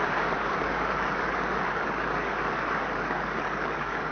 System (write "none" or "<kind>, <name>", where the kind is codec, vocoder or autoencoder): codec, DAC